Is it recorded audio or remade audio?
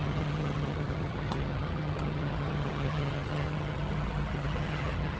remade